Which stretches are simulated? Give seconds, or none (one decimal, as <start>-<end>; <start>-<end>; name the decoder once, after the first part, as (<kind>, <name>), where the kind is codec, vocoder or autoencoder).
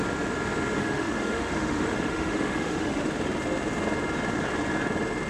0.8-3.0 (autoencoder, DAC-VAE)